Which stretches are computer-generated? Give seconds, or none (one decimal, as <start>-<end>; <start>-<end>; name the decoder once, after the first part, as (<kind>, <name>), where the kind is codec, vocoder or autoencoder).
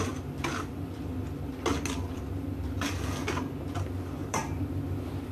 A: 4.2-4.8 (vocoder, BigVGAN v2)